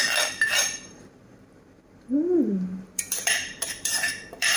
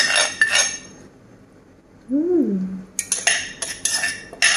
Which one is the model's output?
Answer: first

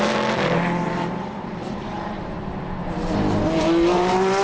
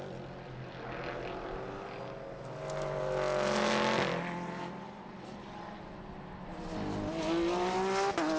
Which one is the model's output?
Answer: first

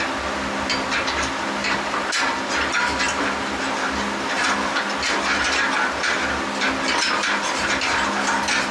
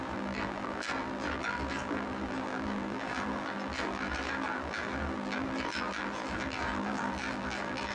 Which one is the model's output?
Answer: second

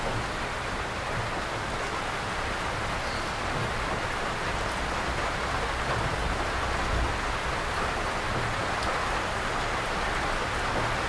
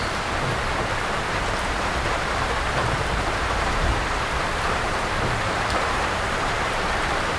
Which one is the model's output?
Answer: second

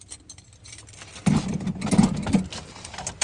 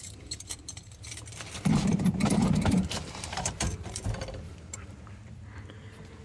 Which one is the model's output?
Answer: second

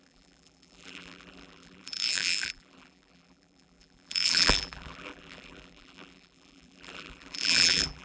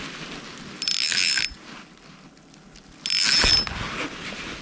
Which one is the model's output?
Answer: first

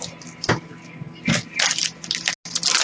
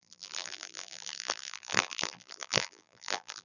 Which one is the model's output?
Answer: second